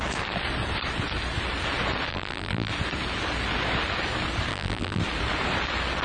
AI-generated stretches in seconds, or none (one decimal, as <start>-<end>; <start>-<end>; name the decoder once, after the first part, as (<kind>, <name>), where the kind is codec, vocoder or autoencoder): 2.1-2.7 (vocoder, BigVGAN v2); 4.5-5.0